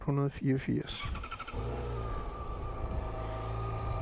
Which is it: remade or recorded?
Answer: recorded